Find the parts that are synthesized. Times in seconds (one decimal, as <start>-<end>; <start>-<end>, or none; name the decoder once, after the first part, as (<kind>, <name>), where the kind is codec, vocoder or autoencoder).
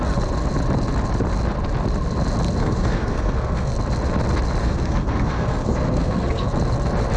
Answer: 2.6-3.7 (codec, SNAC); 4.6-6.5